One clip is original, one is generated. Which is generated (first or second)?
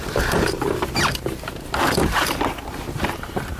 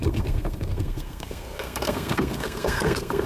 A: second